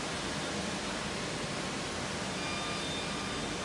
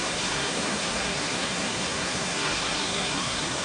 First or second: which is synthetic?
second